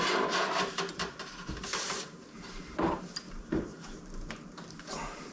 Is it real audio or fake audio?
fake